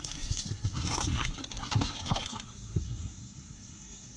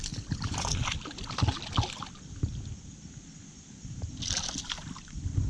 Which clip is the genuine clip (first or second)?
second